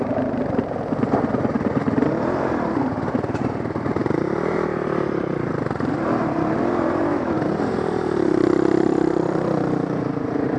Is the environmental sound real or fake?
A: fake